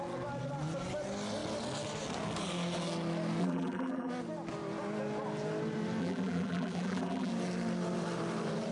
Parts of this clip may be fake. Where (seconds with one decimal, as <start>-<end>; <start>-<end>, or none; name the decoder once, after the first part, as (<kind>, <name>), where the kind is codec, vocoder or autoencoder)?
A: 3.4-4.1 (vocoder, BigVGAN v2); 6.0-7.3